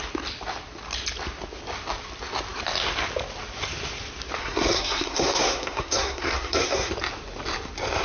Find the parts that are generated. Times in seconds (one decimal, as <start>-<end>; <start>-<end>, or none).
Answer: 4.4-6.9